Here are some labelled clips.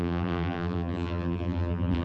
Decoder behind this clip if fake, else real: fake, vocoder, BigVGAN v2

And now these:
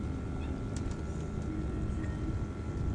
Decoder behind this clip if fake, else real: real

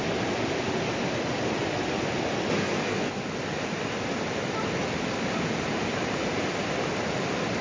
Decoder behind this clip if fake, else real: real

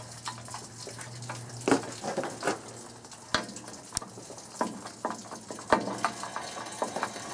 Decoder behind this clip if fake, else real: real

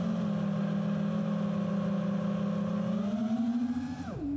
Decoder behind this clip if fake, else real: real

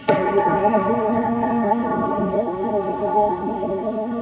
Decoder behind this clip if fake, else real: fake, codec, SNAC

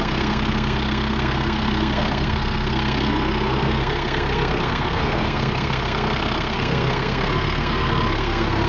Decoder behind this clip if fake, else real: fake, codec, SNAC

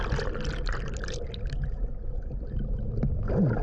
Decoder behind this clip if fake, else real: real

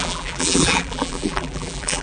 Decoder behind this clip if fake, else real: fake, vocoder, BigVGAN v2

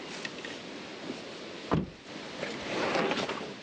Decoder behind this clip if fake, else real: real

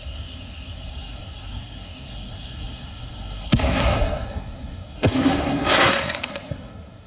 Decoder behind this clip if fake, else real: fake, codec, SNAC